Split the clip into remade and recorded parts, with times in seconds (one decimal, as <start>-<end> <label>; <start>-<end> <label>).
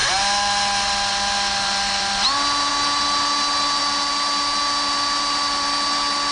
0.0-6.3 recorded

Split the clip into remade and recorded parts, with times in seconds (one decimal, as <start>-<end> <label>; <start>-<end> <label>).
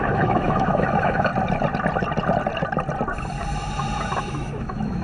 0.0-1.3 remade; 1.3-4.3 recorded; 4.3-5.0 remade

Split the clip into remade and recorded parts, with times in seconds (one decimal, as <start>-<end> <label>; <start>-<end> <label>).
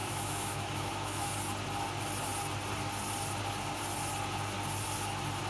0.0-1.3 remade; 1.3-5.5 recorded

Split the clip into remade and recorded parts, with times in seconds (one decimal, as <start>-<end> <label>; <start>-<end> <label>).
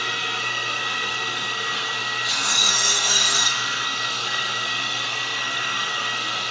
0.0-6.5 remade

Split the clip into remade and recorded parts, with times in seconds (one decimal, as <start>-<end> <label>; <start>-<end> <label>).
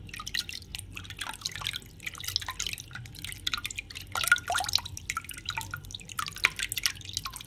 0.0-7.5 recorded